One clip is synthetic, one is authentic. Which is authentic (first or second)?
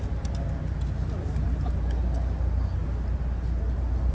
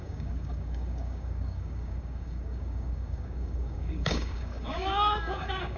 first